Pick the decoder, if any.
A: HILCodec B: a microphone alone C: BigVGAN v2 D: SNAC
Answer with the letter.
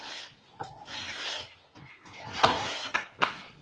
D